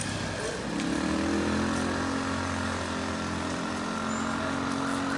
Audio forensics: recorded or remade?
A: recorded